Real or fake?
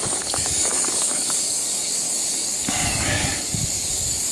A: fake